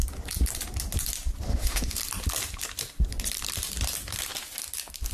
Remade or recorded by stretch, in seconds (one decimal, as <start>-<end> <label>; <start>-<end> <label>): 0.0-1.5 recorded; 1.5-2.0 remade; 2.0-5.1 recorded